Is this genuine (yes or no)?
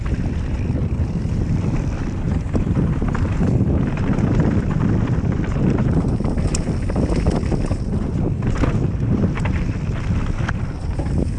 no